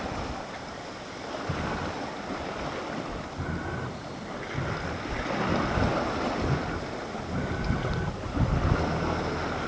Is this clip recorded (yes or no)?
yes